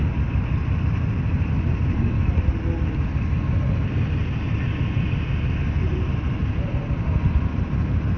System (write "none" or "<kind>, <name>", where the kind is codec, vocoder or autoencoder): none